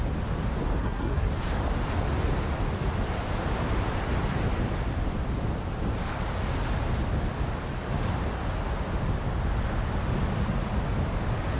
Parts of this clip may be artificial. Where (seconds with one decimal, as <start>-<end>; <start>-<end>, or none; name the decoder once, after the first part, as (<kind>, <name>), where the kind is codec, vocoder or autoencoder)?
0.8-1.3 (codec, SNAC)